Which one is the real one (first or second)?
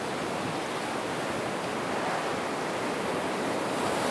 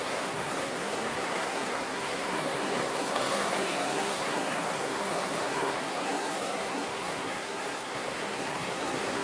first